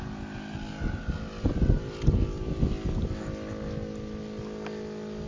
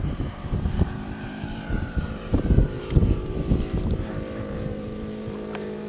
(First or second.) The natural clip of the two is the first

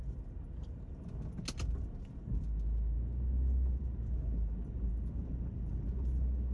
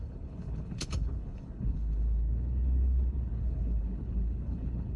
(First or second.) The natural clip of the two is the first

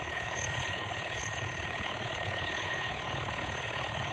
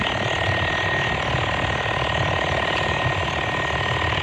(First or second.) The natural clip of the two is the second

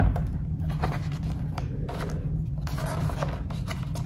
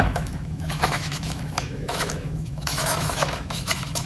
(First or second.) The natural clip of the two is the first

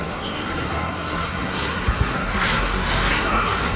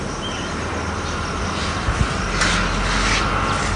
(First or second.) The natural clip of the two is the second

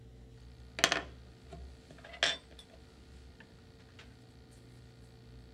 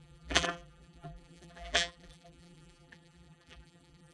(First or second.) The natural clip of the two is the first